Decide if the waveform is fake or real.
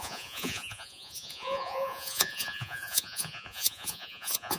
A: fake